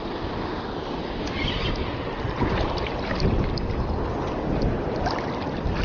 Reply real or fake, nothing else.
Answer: real